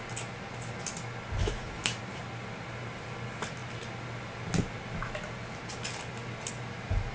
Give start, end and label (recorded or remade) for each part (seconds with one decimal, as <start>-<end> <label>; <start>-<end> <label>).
0.0-1.4 recorded; 1.4-2.0 remade; 2.0-7.1 recorded